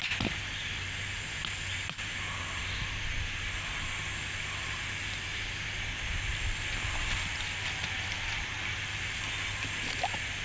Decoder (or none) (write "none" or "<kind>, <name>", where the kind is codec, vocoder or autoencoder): none